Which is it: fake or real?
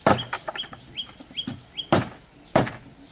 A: real